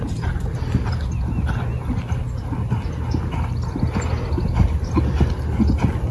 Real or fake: real